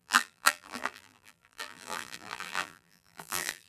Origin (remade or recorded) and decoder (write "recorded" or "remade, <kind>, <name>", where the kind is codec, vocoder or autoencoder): remade, vocoder, BigVGAN v2